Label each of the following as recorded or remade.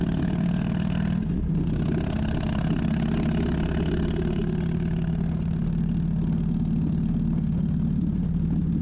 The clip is recorded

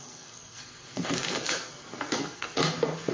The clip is remade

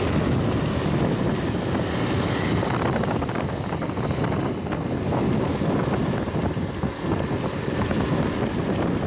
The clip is recorded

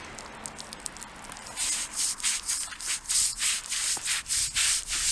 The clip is recorded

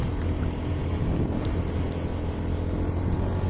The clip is recorded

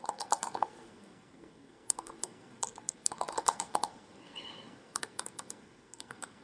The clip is remade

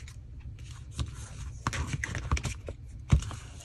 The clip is recorded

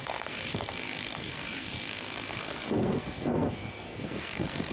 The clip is remade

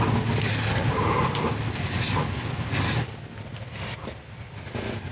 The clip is recorded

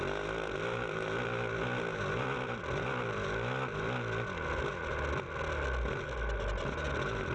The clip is recorded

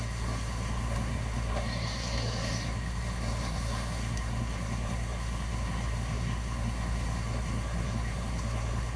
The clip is remade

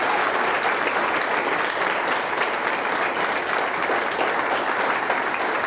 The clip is recorded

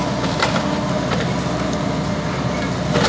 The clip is recorded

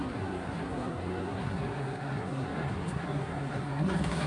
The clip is remade